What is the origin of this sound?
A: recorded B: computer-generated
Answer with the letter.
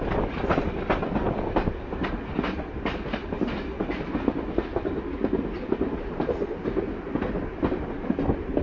A